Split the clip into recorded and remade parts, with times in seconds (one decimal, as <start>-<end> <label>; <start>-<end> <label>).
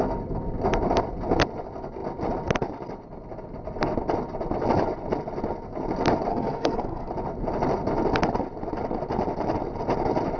0.0-6.3 recorded; 6.3-7.1 remade; 7.1-10.4 recorded